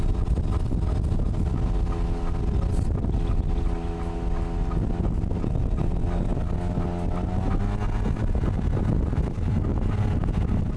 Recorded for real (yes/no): yes